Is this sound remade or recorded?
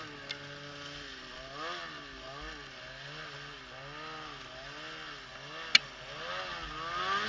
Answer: recorded